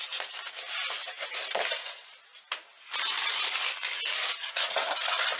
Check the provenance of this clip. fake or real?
real